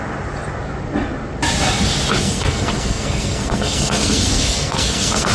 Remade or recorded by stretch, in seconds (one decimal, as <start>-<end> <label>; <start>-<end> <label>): 0.0-2.2 recorded; 2.2-5.3 remade